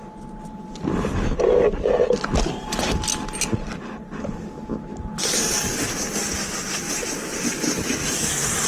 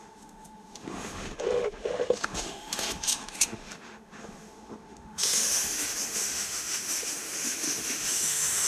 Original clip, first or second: first